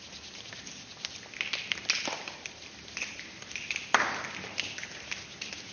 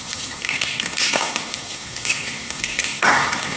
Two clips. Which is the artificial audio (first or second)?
second